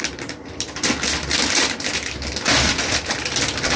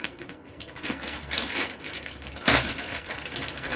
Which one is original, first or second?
first